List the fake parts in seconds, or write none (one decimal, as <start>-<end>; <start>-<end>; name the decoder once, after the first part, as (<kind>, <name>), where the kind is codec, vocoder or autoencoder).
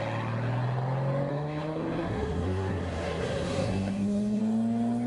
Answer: 1.3-4.4 (codec, SNAC)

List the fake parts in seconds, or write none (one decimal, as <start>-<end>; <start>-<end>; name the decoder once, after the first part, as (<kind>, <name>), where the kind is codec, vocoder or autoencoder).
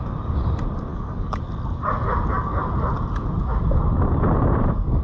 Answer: 0.9-1.4 (codec, DAC)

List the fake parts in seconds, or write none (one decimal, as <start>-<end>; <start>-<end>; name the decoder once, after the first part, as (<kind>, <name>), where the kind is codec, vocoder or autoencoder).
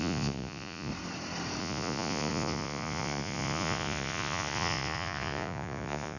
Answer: 0.0-0.9 (vocoder, Vocos); 1.6-6.2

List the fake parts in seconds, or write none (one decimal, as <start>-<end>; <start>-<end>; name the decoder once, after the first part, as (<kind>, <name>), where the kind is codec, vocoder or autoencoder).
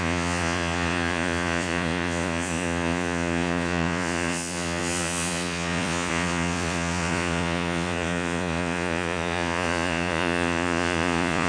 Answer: 0.0-11.5 (vocoder, Vocos)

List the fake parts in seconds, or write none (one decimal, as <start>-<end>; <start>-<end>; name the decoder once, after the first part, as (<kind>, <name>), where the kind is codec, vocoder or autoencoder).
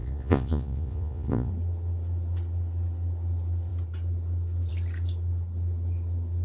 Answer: 0.0-1.5 (vocoder, Vocos)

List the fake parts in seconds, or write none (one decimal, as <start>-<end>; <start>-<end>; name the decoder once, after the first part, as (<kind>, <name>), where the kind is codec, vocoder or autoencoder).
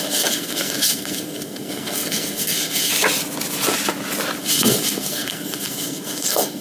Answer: 0.0-2.9 (codec, SNAC); 4.4-6.6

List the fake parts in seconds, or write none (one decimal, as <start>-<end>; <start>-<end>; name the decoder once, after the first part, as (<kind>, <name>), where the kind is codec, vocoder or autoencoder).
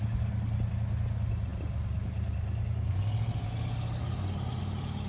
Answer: none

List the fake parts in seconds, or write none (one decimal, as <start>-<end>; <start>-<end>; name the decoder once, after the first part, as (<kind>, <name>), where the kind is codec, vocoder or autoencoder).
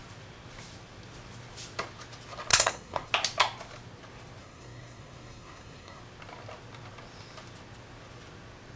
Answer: 2.5-3.1 (codec, SNAC); 4.4-6.0